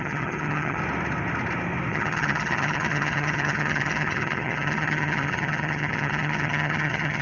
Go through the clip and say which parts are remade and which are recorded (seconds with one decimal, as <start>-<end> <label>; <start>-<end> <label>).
0.0-0.8 remade; 0.8-1.9 recorded; 1.9-7.2 remade